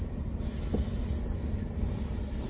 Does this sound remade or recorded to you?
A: recorded